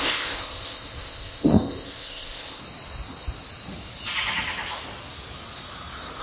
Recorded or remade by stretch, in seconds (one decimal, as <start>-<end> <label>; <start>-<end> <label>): 0.0-2.6 remade; 2.6-6.2 recorded